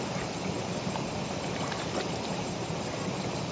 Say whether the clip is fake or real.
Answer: real